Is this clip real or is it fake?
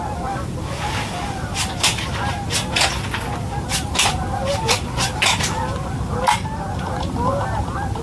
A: real